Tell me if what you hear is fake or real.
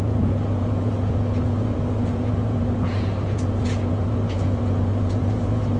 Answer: fake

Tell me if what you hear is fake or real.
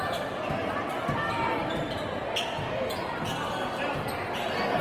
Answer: real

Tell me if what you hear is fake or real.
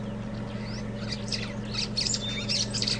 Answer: real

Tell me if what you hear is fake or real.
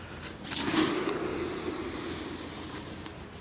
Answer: real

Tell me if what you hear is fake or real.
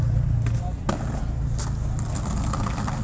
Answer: real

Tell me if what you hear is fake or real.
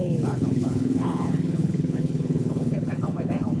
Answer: fake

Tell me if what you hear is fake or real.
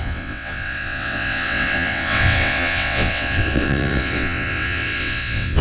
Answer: fake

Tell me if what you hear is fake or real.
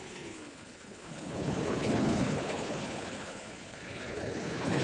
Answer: fake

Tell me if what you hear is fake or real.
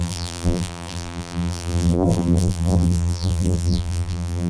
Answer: fake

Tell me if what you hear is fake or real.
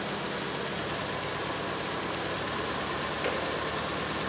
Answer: real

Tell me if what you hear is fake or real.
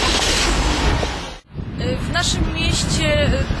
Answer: real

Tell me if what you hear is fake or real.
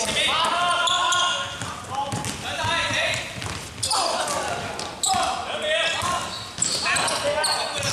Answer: real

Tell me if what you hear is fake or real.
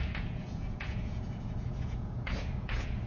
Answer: fake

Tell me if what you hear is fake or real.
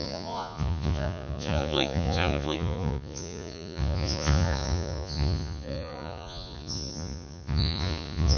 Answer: fake